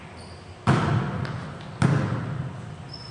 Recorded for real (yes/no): yes